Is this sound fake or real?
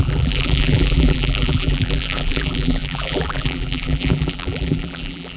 fake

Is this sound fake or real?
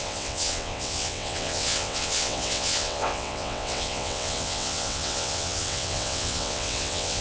fake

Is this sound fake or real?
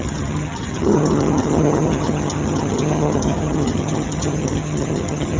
fake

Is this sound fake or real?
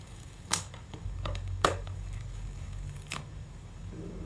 fake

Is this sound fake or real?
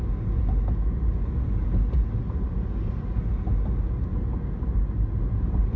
real